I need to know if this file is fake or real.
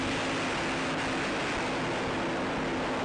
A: real